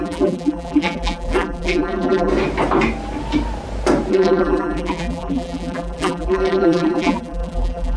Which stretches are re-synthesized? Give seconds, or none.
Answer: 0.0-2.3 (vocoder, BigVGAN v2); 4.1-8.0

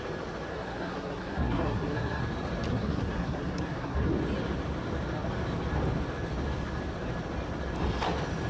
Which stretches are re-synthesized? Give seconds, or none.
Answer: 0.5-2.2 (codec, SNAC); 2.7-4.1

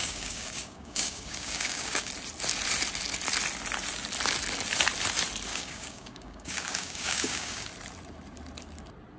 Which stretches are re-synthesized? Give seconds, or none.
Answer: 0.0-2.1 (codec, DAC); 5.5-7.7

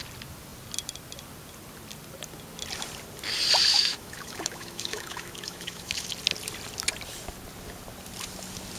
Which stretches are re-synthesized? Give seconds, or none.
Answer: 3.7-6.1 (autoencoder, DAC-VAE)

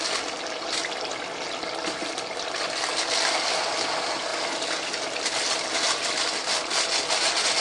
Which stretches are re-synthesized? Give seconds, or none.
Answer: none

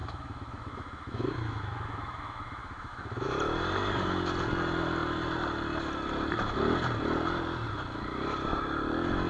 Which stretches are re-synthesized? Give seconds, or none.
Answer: 0.0-3.3 (autoencoder, DAC-VAE)

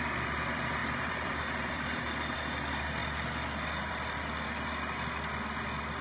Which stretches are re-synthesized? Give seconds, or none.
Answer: 0.8-2.4 (vocoder, BigVGAN v2)

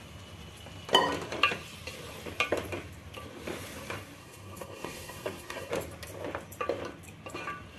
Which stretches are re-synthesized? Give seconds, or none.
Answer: 4.2-5.7 (codec, SNAC)